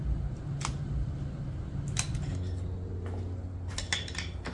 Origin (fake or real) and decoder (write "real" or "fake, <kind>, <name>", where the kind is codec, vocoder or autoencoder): real